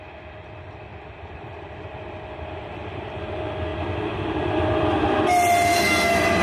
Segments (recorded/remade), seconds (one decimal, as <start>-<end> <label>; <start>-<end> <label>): 0.0-0.9 recorded; 0.9-3.2 remade; 3.2-3.7 recorded; 3.7-5.0 remade; 5.0-6.4 recorded